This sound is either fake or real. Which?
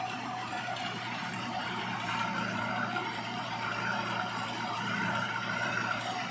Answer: fake